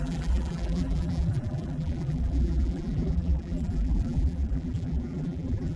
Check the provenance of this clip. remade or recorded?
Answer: remade